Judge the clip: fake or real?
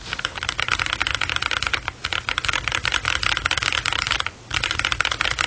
real